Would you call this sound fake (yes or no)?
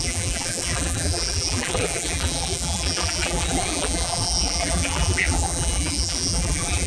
yes